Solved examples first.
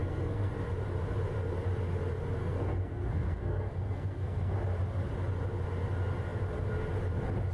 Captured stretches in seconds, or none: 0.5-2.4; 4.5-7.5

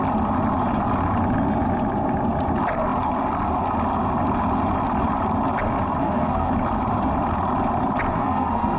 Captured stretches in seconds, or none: 0.0-6.0; 6.5-8.1

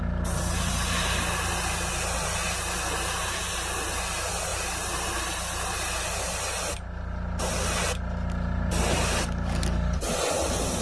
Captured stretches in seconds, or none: 0.0-10.8

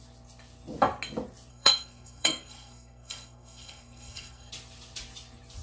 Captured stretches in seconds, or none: 0.0-1.5; 4.5-5.6

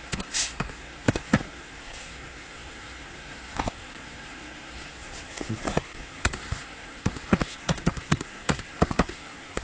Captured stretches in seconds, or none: none

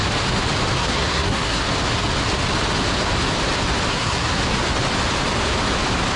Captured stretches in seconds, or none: 0.0-0.8; 1.6-3.9; 4.4-6.2

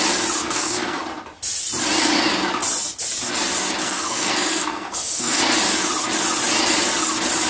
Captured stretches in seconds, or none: 0.0-0.4; 1.0-3.8; 5.4-7.5